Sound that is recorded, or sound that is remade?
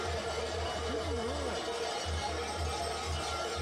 recorded